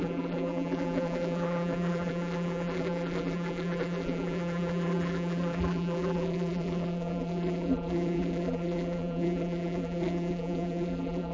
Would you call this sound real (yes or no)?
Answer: no